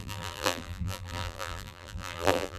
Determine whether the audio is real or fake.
fake